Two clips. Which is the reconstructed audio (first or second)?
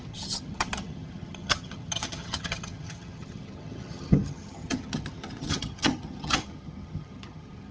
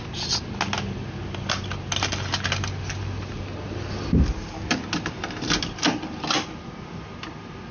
first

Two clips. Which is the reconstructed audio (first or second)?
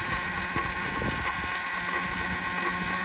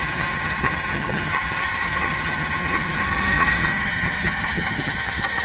second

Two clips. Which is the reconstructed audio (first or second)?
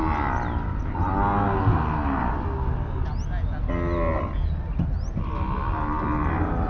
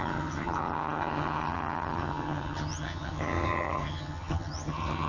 second